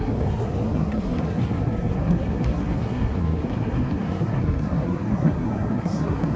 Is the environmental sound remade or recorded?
remade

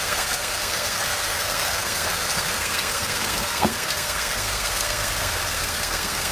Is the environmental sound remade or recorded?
remade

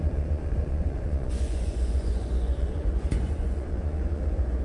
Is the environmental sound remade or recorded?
remade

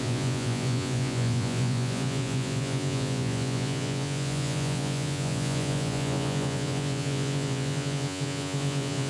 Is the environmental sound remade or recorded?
remade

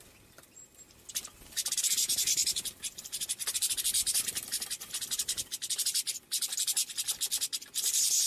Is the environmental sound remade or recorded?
recorded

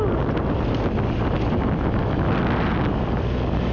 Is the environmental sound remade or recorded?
recorded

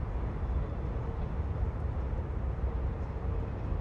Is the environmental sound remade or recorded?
recorded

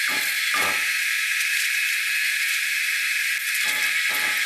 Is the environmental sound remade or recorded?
recorded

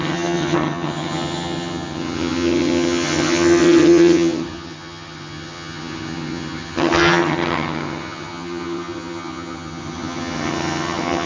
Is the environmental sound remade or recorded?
remade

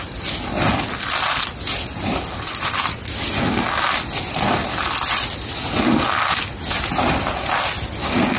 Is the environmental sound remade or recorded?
recorded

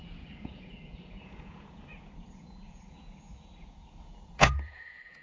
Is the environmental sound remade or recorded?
remade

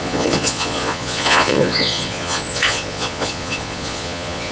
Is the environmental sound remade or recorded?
remade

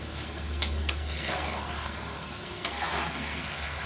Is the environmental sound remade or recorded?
remade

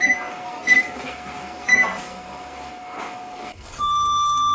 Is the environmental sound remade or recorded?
remade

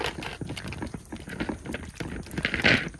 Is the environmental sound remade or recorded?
recorded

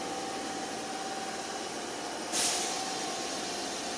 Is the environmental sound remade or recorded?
recorded